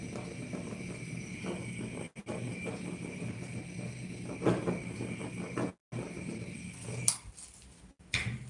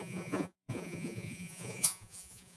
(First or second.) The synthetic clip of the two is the second